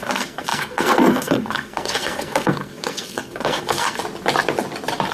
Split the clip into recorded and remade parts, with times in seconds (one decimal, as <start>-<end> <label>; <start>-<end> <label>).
0.0-4.0 remade; 4.0-5.1 recorded